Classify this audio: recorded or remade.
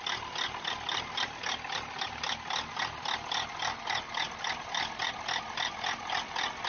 recorded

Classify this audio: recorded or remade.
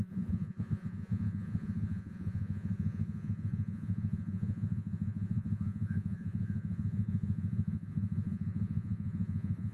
remade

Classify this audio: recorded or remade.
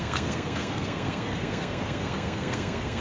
remade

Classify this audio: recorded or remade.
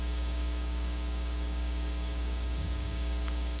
remade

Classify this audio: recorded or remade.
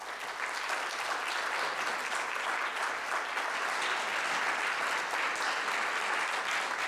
recorded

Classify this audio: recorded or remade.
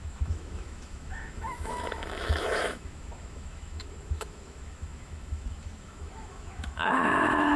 remade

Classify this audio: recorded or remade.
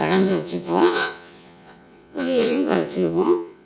remade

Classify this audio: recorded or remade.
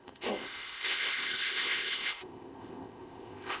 remade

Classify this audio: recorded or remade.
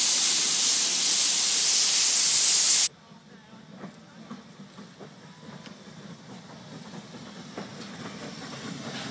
recorded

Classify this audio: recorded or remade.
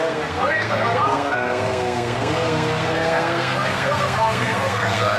remade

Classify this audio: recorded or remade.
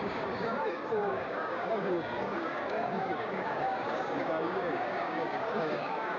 remade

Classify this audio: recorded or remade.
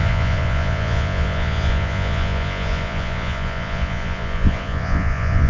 remade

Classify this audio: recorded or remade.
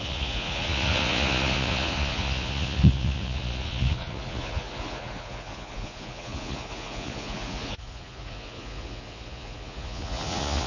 remade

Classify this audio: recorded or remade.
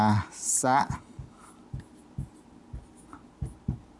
recorded